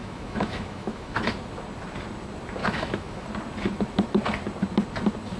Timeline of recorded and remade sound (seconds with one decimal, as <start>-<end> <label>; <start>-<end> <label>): 0.0-1.2 remade; 1.2-2.6 recorded; 2.6-3.3 remade; 3.3-5.4 recorded